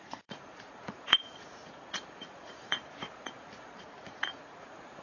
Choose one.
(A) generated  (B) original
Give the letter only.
A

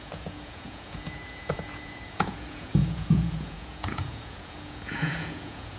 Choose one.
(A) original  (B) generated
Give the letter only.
B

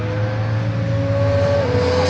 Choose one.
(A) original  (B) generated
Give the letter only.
A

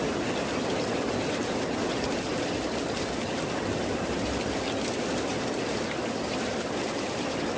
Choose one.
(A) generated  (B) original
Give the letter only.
B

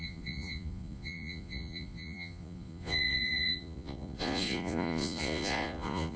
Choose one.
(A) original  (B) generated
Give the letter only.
B